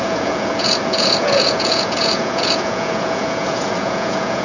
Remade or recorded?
remade